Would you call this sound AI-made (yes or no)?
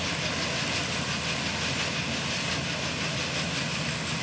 no